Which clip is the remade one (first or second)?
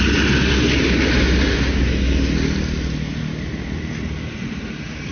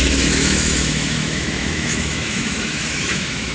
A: second